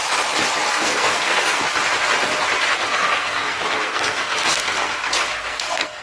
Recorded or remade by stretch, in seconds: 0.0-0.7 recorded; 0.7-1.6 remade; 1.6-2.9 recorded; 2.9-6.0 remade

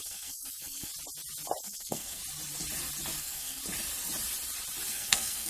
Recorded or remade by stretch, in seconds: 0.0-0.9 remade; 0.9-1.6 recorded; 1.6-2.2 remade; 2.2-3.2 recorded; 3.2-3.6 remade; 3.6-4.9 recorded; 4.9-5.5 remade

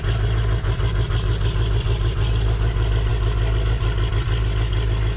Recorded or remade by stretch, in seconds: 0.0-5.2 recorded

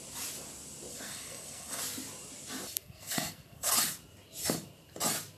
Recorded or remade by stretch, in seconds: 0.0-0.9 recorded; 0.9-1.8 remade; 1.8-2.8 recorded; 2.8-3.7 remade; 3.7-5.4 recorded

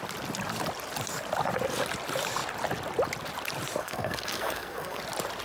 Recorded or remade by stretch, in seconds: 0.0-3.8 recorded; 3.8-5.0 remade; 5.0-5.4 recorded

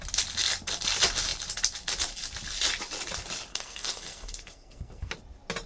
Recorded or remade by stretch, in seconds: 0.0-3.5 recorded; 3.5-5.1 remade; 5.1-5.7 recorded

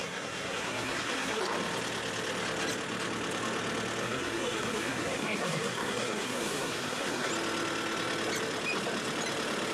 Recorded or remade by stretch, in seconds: 0.0-1.4 remade; 1.4-4.0 recorded; 4.0-7.3 remade; 7.3-9.7 recorded

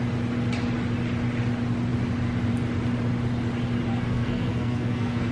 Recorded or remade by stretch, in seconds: 0.0-3.9 recorded; 3.9-5.3 remade